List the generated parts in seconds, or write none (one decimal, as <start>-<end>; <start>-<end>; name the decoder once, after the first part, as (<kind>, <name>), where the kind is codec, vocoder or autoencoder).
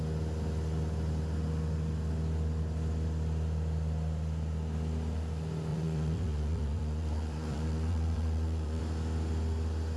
5.7-8.8 (vocoder, Vocos)